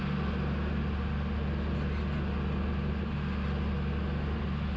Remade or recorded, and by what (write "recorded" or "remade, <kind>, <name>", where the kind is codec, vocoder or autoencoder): recorded